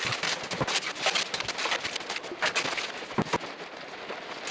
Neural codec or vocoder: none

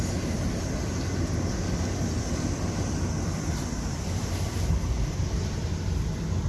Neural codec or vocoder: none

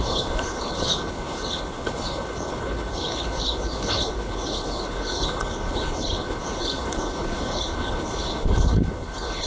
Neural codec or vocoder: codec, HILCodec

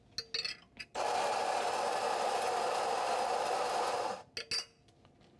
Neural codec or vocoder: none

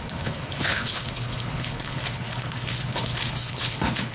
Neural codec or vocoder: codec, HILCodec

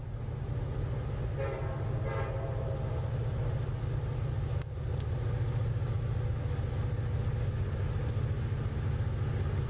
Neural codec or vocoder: none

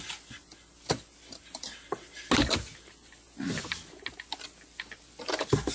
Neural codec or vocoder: none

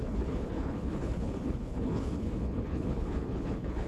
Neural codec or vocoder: codec, HILCodec